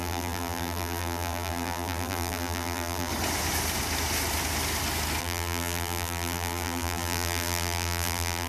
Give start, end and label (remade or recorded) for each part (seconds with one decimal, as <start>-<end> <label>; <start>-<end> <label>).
0.0-3.1 remade; 3.1-5.2 recorded; 5.2-8.5 remade